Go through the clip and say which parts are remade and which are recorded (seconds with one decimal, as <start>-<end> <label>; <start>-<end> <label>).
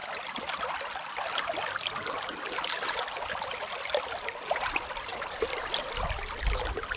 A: 0.0-5.1 recorded; 5.1-5.6 remade; 5.6-7.0 recorded